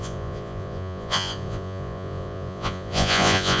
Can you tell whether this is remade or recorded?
remade